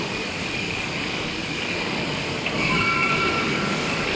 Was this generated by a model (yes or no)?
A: yes